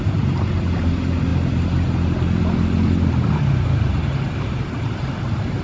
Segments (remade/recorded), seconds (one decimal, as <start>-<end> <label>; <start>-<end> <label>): 0.0-5.6 recorded